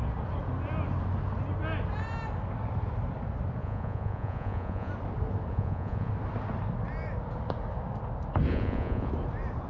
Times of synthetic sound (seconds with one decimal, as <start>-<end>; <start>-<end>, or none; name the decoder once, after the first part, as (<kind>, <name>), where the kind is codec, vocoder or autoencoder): 3.6-4.9 (vocoder, Vocos); 5.5-6.1; 8.5-9.1